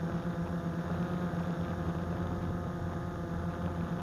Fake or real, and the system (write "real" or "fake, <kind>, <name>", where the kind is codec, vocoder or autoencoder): real